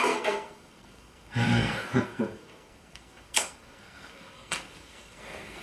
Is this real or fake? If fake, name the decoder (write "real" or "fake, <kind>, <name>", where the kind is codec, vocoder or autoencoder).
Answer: fake, codec, SNAC